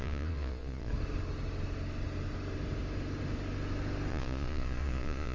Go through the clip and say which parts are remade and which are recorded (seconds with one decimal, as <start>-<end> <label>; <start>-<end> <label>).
0.0-0.9 remade; 0.9-4.1 recorded; 4.1-5.3 remade